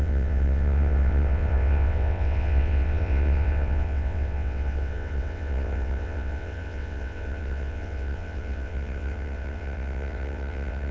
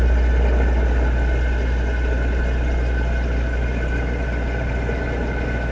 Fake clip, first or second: first